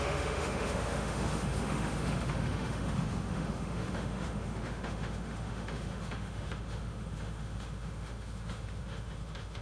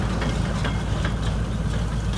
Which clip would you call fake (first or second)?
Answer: first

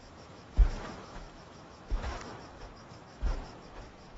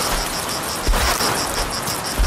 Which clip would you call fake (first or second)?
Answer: first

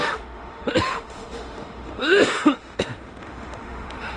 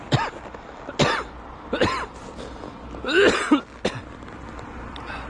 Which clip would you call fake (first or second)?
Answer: first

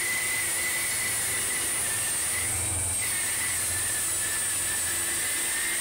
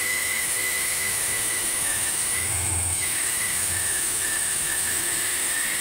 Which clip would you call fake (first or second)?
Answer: second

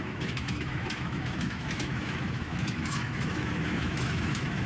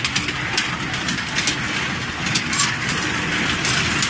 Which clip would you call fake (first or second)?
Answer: first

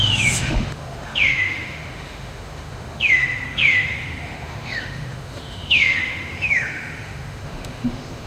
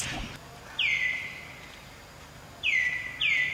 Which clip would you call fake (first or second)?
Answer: first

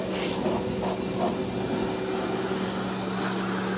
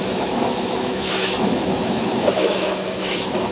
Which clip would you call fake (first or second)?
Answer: second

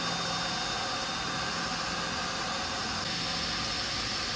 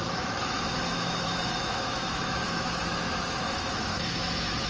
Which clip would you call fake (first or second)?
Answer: second